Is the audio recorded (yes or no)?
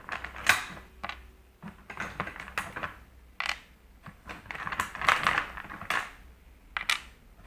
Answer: yes